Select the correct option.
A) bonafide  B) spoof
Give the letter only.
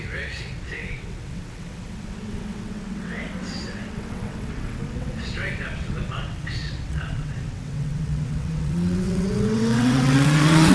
B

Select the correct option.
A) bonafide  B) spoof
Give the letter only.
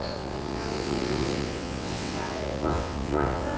B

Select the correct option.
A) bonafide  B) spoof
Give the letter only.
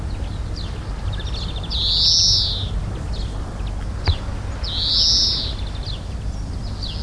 A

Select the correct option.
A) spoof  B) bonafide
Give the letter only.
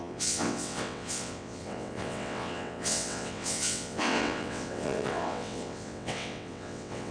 A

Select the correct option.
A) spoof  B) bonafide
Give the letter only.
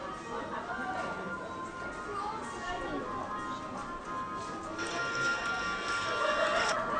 B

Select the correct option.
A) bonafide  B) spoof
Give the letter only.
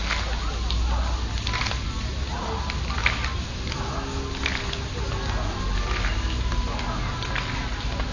A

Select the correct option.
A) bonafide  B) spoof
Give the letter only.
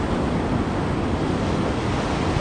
A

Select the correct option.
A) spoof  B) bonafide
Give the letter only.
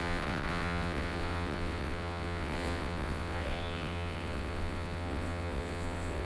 A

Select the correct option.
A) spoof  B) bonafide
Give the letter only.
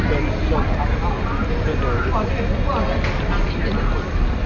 B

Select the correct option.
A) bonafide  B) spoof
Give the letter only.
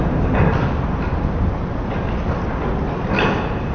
A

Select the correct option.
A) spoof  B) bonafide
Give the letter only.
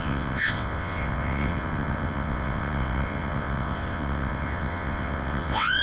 A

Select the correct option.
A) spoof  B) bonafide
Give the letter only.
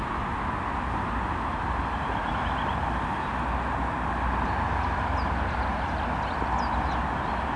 B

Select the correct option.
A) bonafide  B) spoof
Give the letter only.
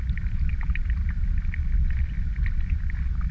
A